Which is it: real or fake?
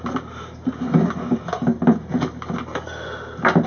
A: real